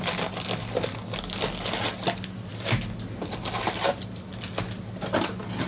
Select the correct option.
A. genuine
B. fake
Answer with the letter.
A